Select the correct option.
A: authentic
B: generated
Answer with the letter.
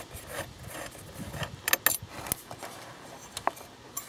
A